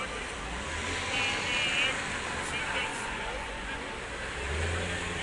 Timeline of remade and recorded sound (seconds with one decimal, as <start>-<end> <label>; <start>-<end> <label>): 0.0-2.9 recorded; 2.9-3.8 remade; 3.8-5.2 recorded